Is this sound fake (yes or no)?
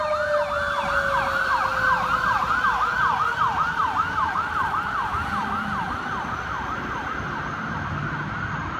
no